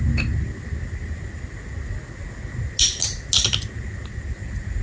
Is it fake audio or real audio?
real